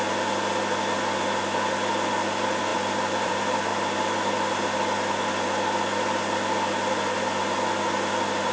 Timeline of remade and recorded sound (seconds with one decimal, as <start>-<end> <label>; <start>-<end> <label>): 0.0-2.7 recorded; 2.7-3.3 remade; 3.3-8.5 recorded